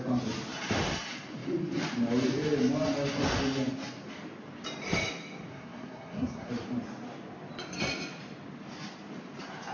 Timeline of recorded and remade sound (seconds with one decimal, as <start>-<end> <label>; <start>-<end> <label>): 0.0-5.5 recorded; 5.5-6.5 remade; 6.5-9.7 recorded